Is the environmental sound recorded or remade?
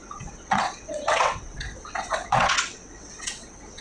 remade